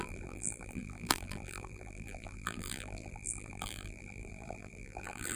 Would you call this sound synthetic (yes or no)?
yes